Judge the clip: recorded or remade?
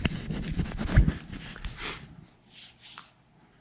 recorded